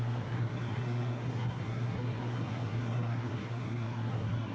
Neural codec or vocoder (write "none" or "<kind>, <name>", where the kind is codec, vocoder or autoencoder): codec, SNAC